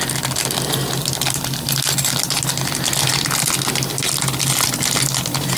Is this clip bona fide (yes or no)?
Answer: yes